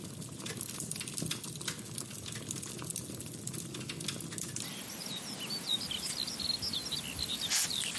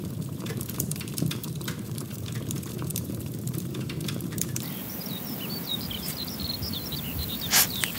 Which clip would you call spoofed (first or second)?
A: second